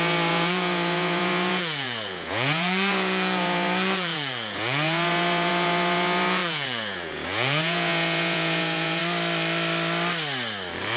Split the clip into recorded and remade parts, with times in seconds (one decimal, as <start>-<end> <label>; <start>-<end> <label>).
0.0-9.0 remade; 9.0-11.0 recorded